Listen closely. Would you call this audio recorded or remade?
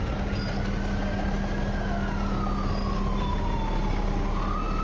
recorded